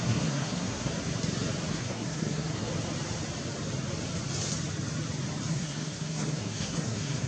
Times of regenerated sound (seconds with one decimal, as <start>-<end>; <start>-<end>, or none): 0.0-0.9; 1.7-2.7; 5.5-7.3